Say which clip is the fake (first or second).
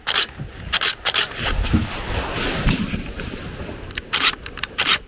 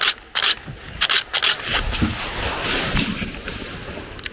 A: first